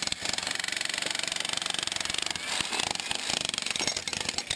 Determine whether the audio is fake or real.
fake